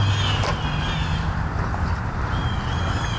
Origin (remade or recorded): recorded